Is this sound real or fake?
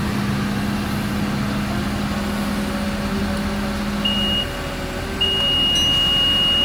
real